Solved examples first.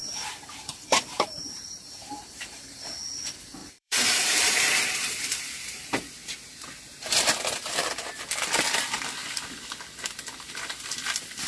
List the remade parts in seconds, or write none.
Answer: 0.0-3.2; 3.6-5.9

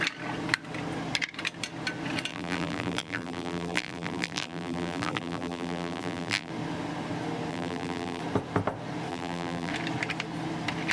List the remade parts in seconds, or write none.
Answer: 2.3-6.5; 7.5-8.2; 9.1-9.7